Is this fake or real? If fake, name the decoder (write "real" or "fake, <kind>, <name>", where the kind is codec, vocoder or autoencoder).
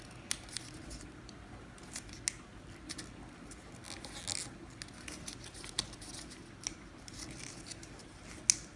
real